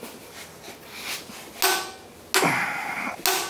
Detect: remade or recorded recorded